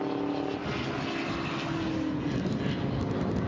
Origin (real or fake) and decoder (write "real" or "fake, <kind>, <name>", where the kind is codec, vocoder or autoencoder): real